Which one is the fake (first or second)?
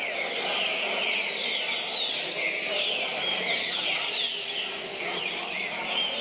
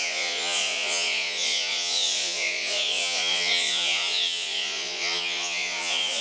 second